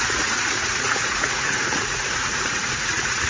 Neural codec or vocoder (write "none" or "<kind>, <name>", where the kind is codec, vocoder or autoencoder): vocoder, Vocos